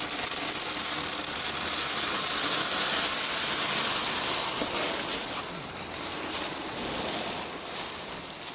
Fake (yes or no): no